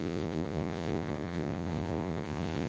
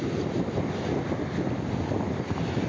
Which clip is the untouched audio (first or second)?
second